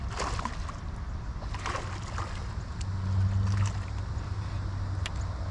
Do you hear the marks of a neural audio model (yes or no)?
no